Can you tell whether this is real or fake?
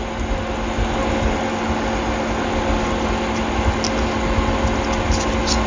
real